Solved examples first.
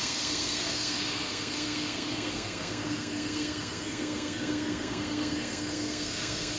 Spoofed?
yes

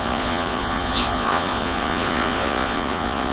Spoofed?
yes